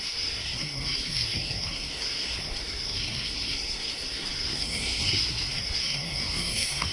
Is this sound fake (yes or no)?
yes